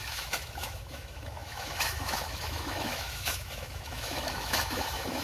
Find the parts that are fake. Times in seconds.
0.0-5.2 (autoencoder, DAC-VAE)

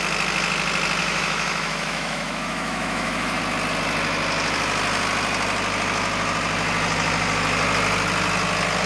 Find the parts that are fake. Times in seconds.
1.0-3.4 (autoencoder, DAC-VAE)